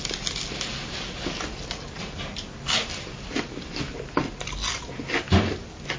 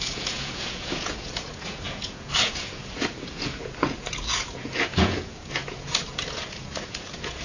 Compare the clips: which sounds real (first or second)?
first